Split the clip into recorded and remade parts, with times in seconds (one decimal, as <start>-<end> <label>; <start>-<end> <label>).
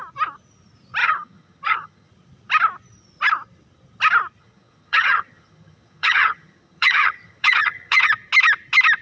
0.0-1.0 recorded; 1.0-2.1 remade; 2.1-4.4 recorded; 4.4-8.1 remade; 8.1-9.0 recorded